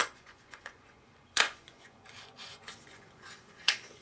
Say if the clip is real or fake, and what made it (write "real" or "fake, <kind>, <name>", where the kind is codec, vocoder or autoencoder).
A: fake, vocoder, Vocos